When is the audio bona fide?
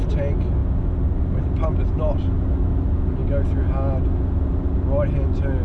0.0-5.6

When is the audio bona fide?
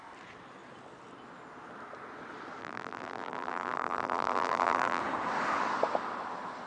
0.0-2.6; 5.0-6.7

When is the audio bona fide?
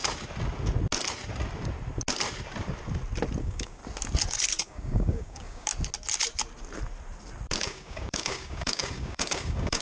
0.0-3.4; 3.8-4.6; 5.7-7.6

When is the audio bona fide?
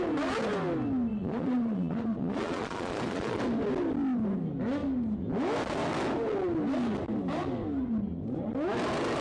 0.0-1.1; 3.4-9.2